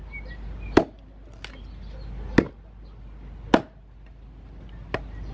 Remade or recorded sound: recorded